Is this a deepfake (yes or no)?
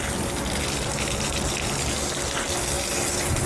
no